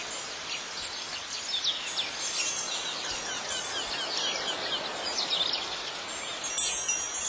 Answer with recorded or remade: recorded